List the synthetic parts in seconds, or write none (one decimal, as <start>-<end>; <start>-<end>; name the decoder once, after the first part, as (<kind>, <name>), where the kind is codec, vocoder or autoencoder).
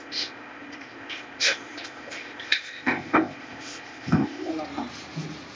0.0-4.5 (codec, ZipCodec)